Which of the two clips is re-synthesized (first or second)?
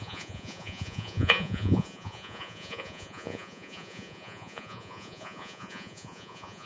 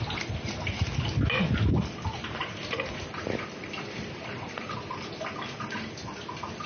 first